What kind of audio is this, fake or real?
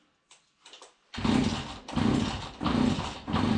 real